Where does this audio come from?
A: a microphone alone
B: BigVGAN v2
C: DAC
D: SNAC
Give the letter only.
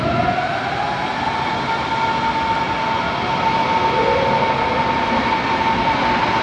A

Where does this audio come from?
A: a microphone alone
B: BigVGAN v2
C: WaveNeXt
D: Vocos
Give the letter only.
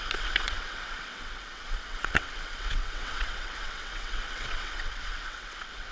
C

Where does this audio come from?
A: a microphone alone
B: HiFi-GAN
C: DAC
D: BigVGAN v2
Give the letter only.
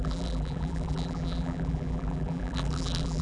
D